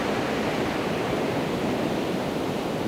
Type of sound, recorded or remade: recorded